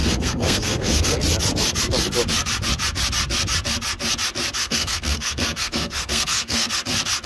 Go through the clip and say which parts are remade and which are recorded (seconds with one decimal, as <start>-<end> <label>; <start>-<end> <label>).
0.0-1.2 remade; 1.2-4.6 recorded; 4.6-6.7 remade; 6.7-7.3 recorded